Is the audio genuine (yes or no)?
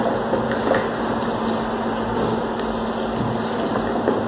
yes